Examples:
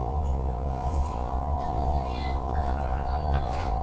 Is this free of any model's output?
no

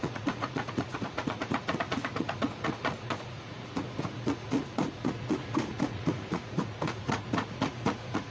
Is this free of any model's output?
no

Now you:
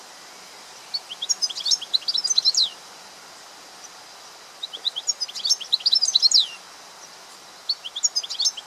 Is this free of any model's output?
yes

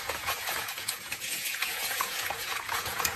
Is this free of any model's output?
no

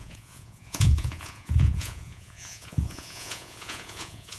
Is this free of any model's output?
no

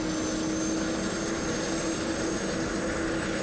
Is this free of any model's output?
yes